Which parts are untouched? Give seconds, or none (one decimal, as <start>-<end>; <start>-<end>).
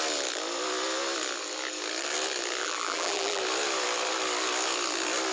0.0-2.6; 3.4-5.3